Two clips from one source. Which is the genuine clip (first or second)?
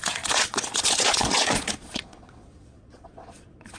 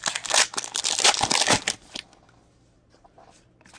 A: second